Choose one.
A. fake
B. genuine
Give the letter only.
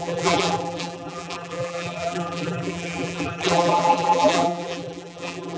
A